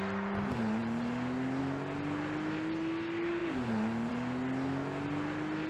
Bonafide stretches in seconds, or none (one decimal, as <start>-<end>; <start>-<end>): 0.0-5.7